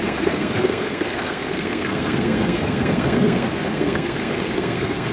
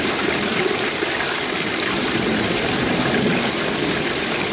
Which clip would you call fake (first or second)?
first